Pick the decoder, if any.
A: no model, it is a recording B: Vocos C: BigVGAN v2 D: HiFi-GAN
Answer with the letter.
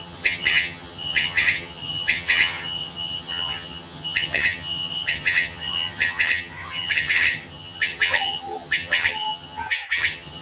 D